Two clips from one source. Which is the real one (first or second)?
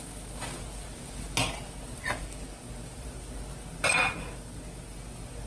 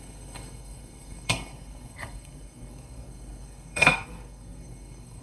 first